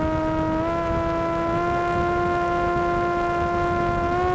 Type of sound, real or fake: real